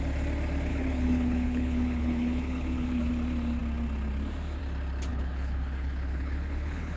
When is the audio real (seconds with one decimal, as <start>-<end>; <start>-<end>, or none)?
0.0-0.7; 3.1-5.1